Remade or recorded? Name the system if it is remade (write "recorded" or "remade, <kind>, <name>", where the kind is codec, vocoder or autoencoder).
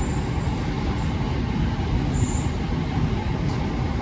recorded